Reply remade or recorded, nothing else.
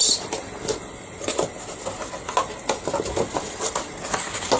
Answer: recorded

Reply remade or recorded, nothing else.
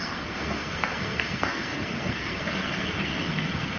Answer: remade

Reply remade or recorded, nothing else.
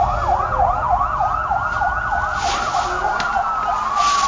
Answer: recorded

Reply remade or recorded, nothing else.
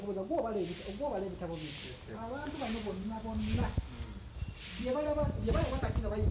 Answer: recorded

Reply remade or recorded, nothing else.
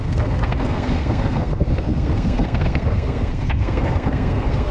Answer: remade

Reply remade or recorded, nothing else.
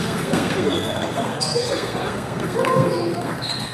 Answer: remade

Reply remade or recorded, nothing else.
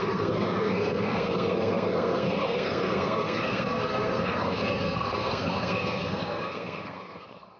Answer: remade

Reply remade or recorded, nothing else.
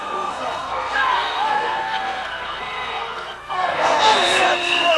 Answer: remade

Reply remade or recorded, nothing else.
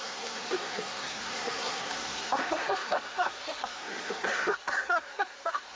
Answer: remade